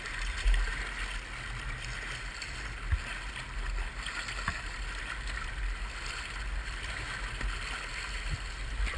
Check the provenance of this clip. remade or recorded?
recorded